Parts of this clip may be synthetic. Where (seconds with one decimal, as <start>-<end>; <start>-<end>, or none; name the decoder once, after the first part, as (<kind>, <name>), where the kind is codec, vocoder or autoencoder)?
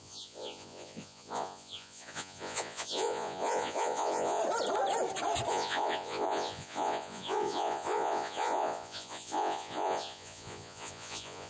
0.0-4.4 (vocoder, Vocos); 5.5-11.5